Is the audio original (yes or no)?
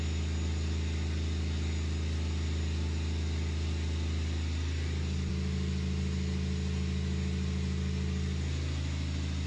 yes